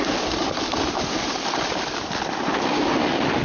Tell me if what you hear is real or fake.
real